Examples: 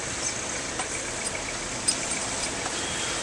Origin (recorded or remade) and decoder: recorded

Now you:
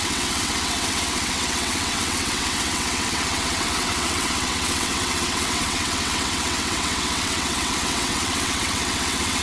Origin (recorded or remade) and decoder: remade, vocoder, WaveNeXt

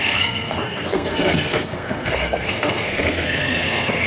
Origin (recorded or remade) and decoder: remade, codec, SNAC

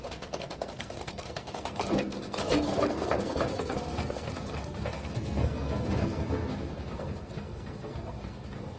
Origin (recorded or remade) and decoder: remade, codec, SNAC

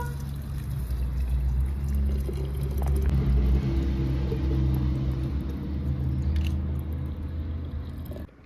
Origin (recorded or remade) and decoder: recorded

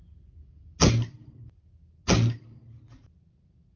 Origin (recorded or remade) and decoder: recorded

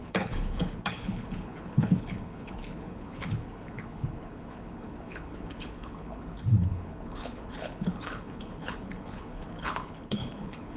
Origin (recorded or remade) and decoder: remade, codec, HILCodec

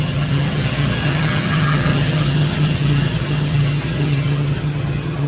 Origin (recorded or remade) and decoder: remade, vocoder, HiFi-GAN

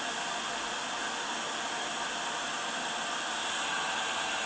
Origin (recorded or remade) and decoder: recorded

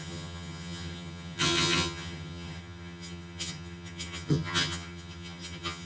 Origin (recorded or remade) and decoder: remade, vocoder, HiFi-GAN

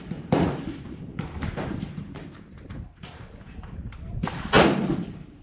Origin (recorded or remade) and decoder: remade, vocoder, BigVGAN v2